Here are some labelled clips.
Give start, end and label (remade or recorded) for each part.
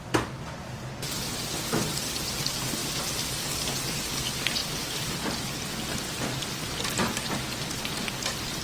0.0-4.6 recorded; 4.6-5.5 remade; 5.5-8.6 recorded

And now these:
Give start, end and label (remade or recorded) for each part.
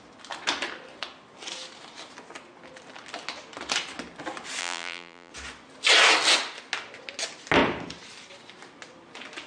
0.0-4.6 recorded; 4.6-5.3 remade; 5.3-9.5 recorded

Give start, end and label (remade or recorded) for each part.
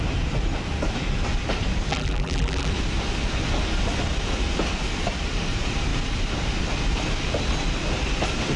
0.0-1.9 recorded; 1.9-2.7 remade; 2.7-8.6 recorded